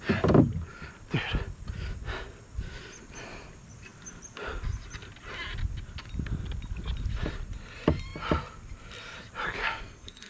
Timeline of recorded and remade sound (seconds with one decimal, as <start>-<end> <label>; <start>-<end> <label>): 0.0-9.6 recorded; 9.6-10.3 remade